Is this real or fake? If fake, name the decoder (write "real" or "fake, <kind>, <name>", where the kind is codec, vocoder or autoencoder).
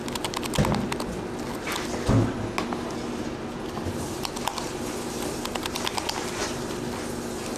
real